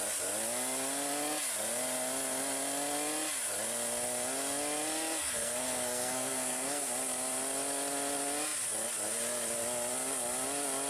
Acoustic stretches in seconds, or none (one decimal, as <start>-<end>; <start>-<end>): 0.0-5.2; 6.9-10.9